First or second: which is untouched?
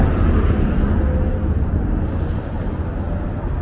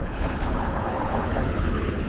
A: first